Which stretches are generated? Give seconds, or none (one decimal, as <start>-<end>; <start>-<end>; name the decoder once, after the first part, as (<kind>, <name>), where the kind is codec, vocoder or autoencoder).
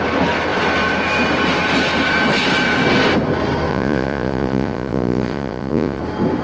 3.7-6.0 (vocoder, Vocos)